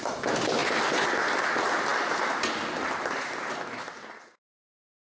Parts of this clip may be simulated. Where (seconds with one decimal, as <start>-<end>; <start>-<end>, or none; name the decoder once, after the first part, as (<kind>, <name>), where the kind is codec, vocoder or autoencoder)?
none